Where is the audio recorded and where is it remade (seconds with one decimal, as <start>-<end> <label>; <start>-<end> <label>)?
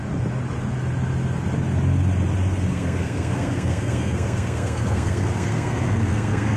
0.0-2.7 recorded; 2.7-6.6 remade